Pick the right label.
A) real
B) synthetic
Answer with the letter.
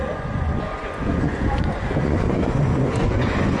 B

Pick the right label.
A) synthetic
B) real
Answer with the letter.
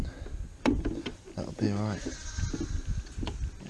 B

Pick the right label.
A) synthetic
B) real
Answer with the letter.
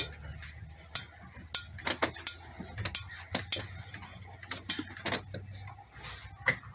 B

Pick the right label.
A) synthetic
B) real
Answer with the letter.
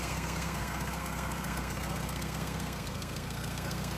A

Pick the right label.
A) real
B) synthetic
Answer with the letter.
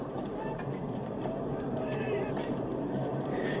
B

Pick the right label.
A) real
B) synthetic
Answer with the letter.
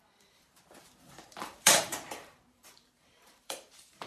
B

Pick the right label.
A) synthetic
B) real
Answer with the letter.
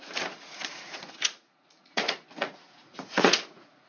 A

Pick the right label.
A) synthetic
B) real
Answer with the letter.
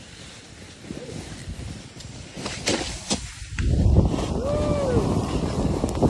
B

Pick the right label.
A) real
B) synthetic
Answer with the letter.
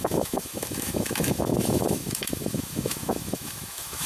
B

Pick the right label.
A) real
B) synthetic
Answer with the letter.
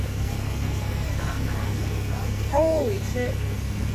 B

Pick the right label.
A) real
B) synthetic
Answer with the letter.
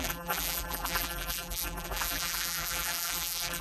B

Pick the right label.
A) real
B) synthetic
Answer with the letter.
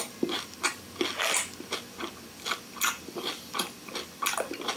A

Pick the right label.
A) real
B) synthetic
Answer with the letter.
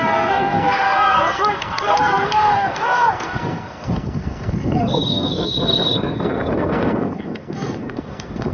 B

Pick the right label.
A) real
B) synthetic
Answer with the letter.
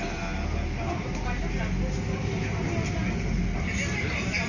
A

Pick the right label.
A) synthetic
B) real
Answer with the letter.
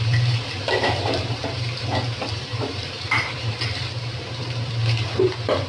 A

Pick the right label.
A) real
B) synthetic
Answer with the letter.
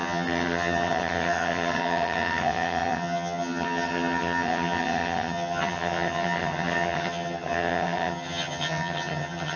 B